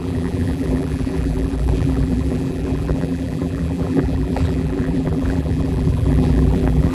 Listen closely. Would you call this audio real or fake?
fake